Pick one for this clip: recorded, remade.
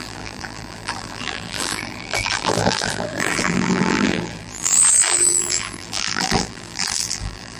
remade